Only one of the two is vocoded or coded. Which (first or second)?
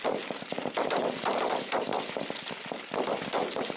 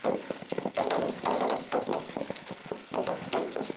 second